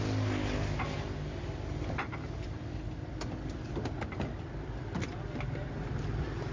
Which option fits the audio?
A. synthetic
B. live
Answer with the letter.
B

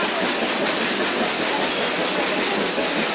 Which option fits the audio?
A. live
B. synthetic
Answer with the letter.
A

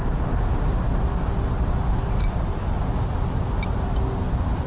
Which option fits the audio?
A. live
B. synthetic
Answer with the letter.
A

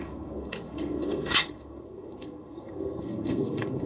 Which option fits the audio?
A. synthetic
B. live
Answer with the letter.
A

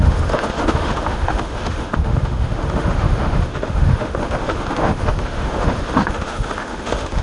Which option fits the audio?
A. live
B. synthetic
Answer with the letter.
B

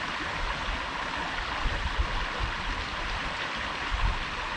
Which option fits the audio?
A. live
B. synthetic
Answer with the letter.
A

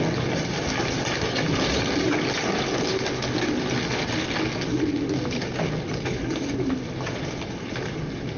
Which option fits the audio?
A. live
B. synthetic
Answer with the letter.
A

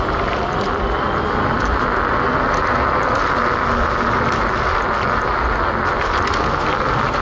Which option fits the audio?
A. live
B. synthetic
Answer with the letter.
A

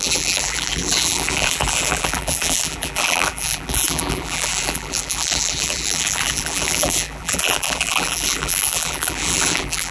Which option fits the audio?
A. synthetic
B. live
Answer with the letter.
A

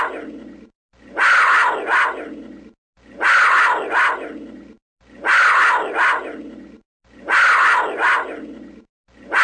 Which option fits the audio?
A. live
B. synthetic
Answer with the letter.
A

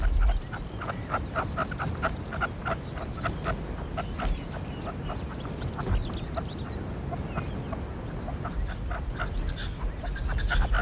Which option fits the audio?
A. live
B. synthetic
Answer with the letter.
A